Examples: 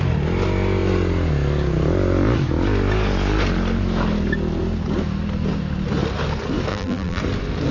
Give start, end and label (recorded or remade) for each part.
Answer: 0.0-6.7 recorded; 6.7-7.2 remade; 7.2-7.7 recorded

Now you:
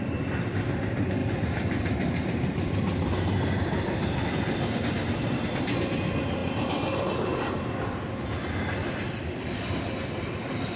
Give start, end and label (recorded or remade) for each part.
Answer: 0.0-1.2 recorded; 1.2-3.1 remade; 3.1-8.8 recorded; 8.8-10.0 remade; 10.0-10.8 recorded

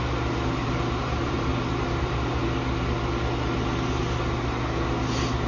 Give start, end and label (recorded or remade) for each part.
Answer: 0.0-0.6 recorded; 0.6-2.4 remade; 2.4-5.5 recorded

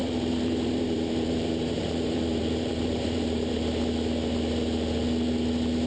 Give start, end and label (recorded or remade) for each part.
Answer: 0.0-3.5 remade; 3.5-5.9 recorded